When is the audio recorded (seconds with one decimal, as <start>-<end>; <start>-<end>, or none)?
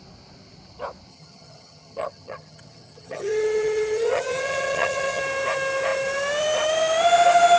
0.0-1.1; 5.2-7.6